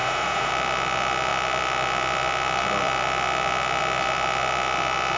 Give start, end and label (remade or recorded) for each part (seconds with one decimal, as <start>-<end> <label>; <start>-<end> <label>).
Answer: 0.0-0.5 remade; 0.5-5.2 recorded